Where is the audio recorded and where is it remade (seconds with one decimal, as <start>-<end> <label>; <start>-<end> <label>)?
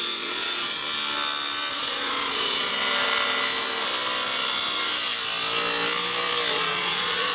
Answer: 0.0-0.8 remade; 0.8-1.7 recorded; 1.7-2.7 remade; 2.7-6.5 recorded; 6.5-7.3 remade